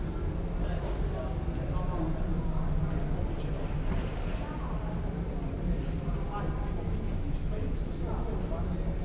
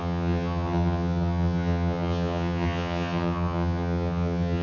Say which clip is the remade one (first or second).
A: second